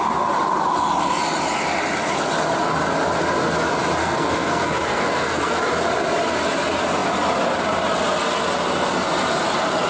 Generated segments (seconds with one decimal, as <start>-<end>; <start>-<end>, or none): 4.0-5.6

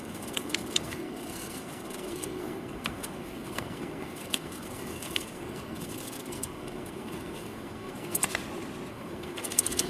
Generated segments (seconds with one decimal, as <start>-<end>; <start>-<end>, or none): 0.0-8.2; 8.9-9.9

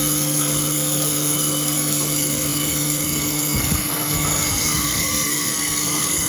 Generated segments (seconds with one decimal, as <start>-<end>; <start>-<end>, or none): 0.0-6.3